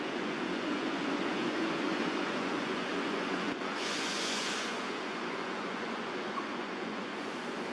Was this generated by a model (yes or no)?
yes